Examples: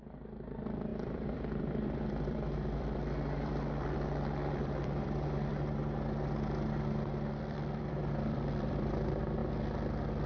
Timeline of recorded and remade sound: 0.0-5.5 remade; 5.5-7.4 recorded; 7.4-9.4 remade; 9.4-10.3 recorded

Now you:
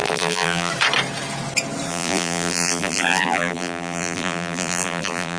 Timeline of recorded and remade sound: 0.0-0.7 remade; 0.7-1.9 recorded; 1.9-5.4 remade

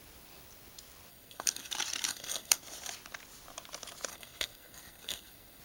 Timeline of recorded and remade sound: 0.0-1.1 recorded; 1.1-1.7 remade; 1.7-2.1 recorded; 2.1-2.6 remade; 2.6-4.1 recorded; 4.1-5.6 remade

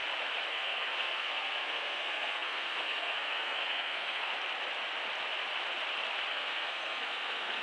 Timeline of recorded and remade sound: 0.0-0.5 recorded; 0.5-4.3 remade; 4.3-6.3 recorded; 6.3-7.6 remade

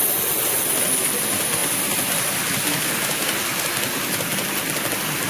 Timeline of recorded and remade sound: 0.0-5.3 recorded